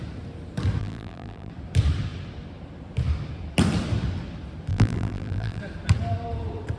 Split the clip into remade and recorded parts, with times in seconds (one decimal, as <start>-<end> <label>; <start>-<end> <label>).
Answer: 0.0-0.8 recorded; 0.8-1.5 remade; 1.5-4.7 recorded; 4.7-5.6 remade; 5.6-6.8 recorded